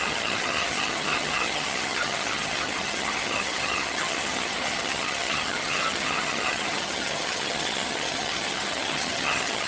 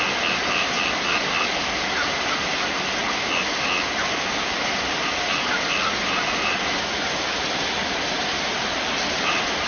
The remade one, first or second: first